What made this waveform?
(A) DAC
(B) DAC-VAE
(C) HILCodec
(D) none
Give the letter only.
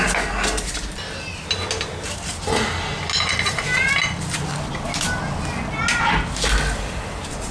D